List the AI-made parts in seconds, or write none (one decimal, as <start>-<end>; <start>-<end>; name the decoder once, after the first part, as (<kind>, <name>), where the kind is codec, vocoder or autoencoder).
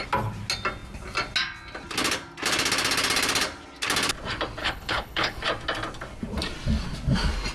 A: 4.6-5.4 (codec, HILCodec)